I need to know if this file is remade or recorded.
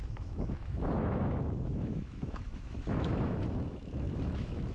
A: remade